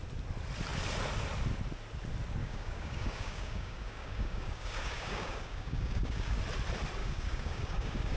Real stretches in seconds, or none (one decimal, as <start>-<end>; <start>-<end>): 0.0-2.4; 6.4-7.0